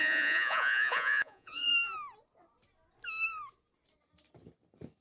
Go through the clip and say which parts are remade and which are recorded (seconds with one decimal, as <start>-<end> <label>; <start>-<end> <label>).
0.0-1.7 remade; 1.7-5.0 recorded